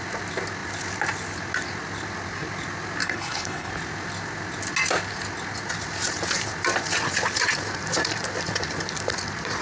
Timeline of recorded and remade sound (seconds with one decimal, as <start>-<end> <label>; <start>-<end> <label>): 0.0-3.0 recorded; 3.0-3.7 remade; 3.7-9.6 recorded